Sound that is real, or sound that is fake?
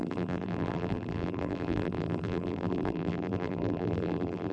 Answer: fake